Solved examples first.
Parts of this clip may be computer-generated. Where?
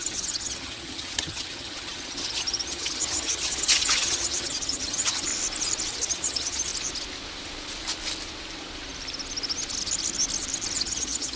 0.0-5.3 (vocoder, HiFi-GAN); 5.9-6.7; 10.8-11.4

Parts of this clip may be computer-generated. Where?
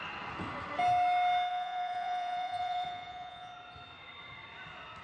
1.5-3.5 (vocoder, Vocos)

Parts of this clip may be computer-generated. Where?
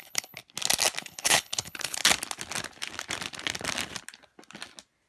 0.0-0.4 (codec, HILCodec); 1.0-2.0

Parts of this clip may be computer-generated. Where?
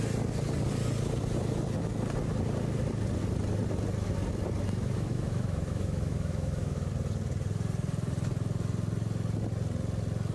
4.8-6.9 (autoencoder, DAC-VAE)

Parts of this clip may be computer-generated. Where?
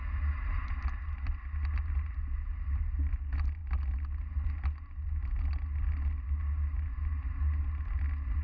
none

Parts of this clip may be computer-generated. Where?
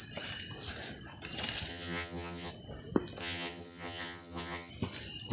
1.7-2.5 (vocoder, HiFi-GAN); 3.2-4.7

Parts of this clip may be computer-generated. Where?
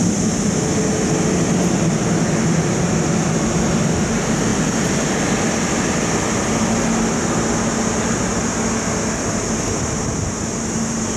none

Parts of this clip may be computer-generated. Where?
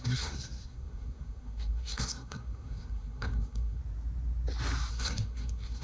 0.0-3.8 (codec, SNAC); 4.9-5.8